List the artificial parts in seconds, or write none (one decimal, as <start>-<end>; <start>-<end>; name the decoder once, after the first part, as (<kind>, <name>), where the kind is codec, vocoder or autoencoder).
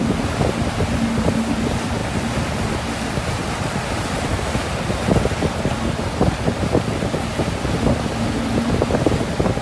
none